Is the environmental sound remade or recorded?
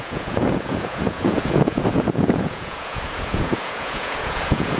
remade